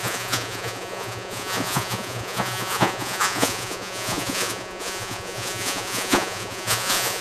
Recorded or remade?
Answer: remade